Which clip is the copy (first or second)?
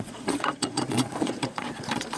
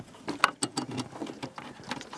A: first